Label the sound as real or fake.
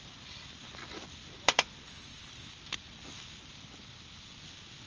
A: real